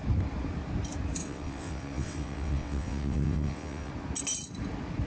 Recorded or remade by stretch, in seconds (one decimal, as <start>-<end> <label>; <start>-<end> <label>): 0.0-1.2 recorded; 1.2-3.9 remade; 3.9-5.1 recorded